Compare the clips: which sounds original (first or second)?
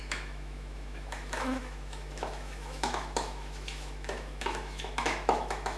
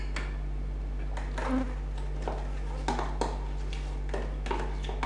second